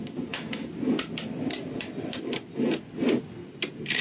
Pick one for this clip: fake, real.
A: real